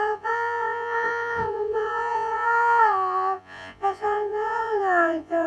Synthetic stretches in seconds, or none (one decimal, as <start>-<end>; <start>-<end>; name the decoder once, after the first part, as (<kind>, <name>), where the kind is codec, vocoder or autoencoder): 0.0-5.5 (vocoder, Vocos)

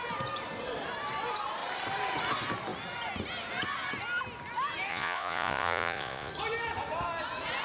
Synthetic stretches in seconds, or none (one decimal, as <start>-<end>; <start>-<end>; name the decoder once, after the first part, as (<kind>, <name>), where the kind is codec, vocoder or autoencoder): 4.9-6.3 (vocoder, Vocos)

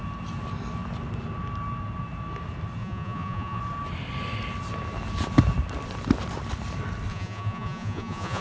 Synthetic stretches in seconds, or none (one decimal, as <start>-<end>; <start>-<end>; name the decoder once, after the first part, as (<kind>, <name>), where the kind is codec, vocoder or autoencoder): 2.8-3.6 (vocoder, Vocos); 7.1-8.4

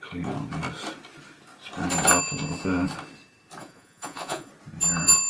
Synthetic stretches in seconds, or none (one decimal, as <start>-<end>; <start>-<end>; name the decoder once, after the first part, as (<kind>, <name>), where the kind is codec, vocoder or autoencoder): 3.6-4.5 (vocoder, Vocos)

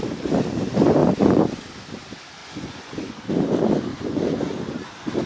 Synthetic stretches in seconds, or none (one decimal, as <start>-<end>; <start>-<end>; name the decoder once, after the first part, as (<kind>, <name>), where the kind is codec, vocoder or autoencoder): 1.0-1.6 (vocoder, Vocos); 2.4-3.2; 3.9-4.5

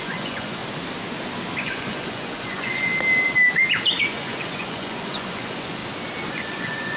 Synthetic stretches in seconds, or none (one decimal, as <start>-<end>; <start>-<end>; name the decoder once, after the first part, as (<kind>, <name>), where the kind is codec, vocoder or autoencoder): 0.0-0.6 (vocoder, Vocos); 1.6-2.9; 4.0-5.8; 6.3-7.0

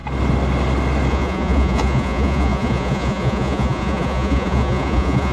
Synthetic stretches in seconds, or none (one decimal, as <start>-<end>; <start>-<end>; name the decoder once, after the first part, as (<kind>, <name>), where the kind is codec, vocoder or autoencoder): 1.1-5.3 (vocoder, Vocos)

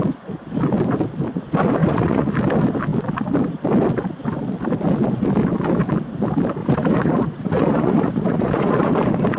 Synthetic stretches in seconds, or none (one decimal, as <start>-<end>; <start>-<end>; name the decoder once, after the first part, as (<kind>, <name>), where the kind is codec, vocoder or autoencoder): 1.8-2.3 (vocoder, Vocos); 6.6-8.9